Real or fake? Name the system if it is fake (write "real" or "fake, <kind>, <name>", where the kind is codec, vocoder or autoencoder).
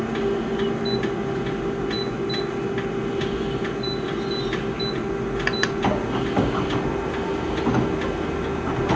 real